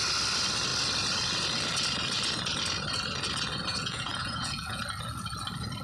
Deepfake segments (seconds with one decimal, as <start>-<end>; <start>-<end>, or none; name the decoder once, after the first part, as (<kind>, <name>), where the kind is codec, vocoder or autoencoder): 3.7-4.8 (vocoder, Vocos)